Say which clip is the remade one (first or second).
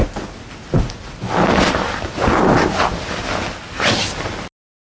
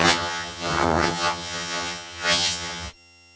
second